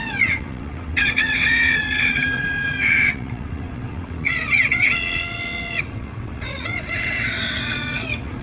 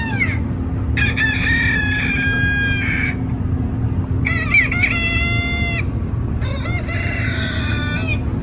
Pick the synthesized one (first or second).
first